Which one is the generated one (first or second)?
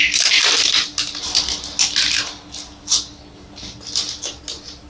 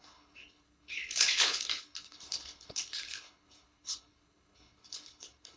second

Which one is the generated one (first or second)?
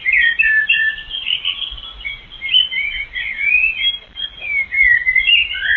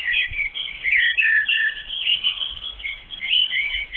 second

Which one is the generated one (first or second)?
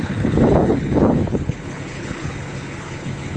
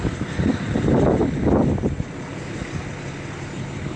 first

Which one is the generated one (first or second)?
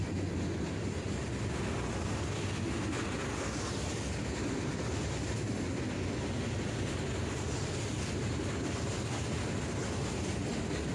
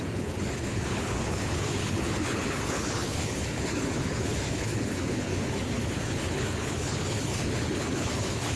second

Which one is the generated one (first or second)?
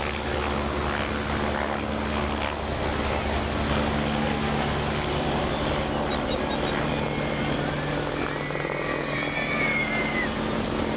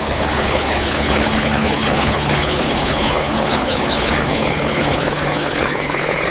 second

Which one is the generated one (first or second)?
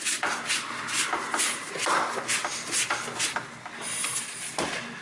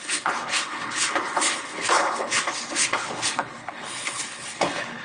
second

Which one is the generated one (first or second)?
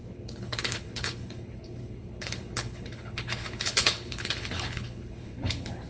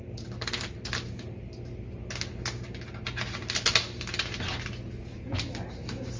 first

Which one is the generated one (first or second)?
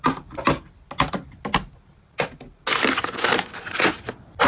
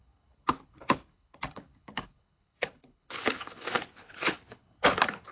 second